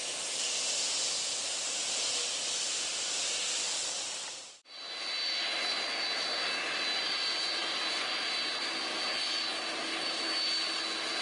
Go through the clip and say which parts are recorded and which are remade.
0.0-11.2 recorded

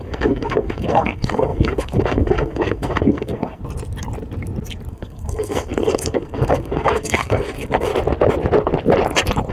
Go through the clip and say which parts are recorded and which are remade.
0.0-3.6 remade; 3.6-4.9 recorded; 4.9-7.9 remade; 7.9-9.5 recorded

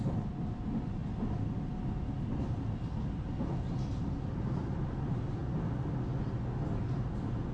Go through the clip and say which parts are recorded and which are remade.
0.0-7.5 recorded

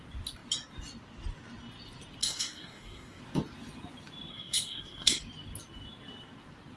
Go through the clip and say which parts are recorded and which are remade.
0.0-2.2 recorded; 2.2-3.2 remade; 3.2-4.3 recorded; 4.3-5.2 remade; 5.2-6.8 recorded